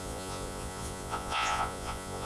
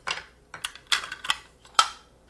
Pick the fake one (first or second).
first